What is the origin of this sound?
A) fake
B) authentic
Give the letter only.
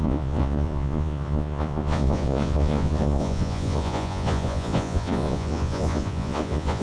A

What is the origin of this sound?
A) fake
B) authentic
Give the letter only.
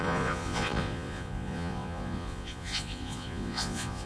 A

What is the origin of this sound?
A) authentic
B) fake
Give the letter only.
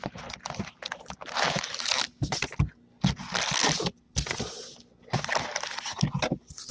A